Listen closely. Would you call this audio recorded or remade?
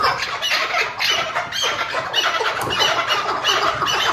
recorded